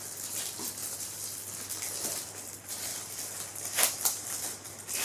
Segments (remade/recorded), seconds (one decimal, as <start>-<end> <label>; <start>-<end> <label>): 0.0-5.0 recorded